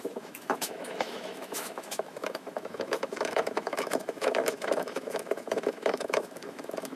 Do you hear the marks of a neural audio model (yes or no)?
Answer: yes